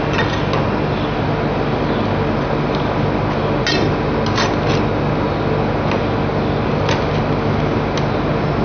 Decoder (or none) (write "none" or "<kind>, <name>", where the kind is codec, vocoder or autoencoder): none